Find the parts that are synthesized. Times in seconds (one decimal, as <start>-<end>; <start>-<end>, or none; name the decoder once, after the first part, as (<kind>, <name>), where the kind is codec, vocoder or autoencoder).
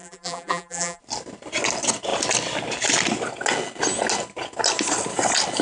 0.0-1.0 (vocoder, BigVGAN v2)